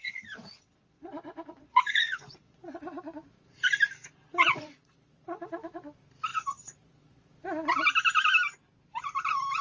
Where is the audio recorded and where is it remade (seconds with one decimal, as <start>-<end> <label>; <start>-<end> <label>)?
0.0-3.0 remade; 3.0-4.4 recorded; 4.4-5.6 remade; 5.6-6.3 recorded; 6.3-7.3 remade; 7.3-9.6 recorded